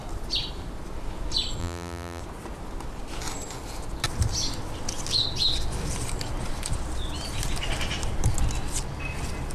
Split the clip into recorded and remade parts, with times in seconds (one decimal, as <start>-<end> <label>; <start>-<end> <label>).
0.0-1.6 recorded; 1.6-2.2 remade; 2.2-9.5 recorded